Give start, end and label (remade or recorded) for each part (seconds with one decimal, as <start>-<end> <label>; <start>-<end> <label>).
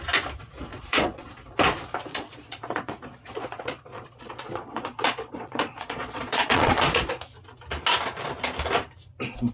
0.0-0.7 recorded; 0.7-1.3 remade; 1.3-2.1 recorded; 2.1-7.1 remade; 7.1-9.5 recorded